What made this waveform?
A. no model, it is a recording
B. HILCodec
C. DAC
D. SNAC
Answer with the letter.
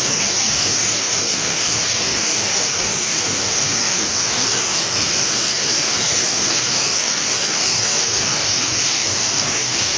C